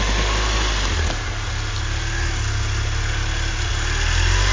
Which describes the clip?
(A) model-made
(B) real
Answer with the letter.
B